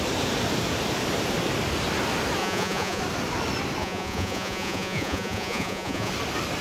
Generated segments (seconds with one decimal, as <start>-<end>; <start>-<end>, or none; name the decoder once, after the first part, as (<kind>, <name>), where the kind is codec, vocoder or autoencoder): 2.4-3.0 (vocoder, Vocos); 3.8-6.1